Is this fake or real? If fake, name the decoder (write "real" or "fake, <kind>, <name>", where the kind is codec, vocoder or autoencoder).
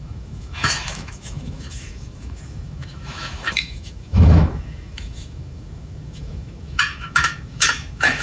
fake, autoencoder, DAC-VAE